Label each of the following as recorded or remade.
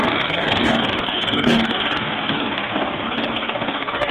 remade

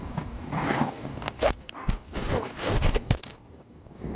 remade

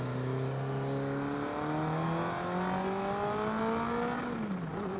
recorded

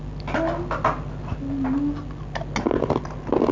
recorded